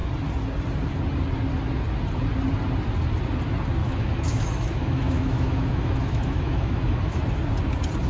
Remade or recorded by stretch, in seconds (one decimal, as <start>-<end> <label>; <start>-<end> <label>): 0.0-3.8 recorded; 3.8-7.2 remade; 7.2-8.1 recorded